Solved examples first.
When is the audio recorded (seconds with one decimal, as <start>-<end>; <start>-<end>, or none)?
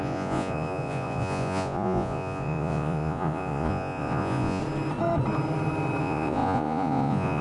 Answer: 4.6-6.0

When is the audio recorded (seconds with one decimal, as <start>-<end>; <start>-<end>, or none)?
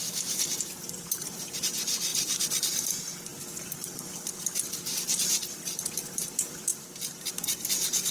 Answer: 0.0-3.3; 5.7-8.1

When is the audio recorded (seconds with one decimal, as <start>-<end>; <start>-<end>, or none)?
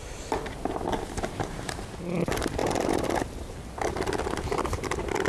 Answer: 0.0-5.3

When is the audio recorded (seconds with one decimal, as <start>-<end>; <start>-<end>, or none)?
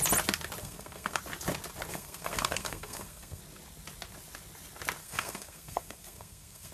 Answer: 0.0-0.6; 1.2-1.9; 3.4-5.0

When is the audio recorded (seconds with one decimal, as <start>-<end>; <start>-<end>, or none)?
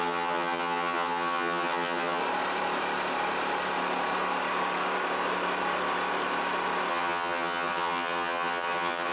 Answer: 2.2-6.9